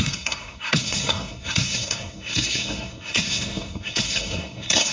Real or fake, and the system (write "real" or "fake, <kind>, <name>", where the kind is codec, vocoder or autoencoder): fake, codec, SNAC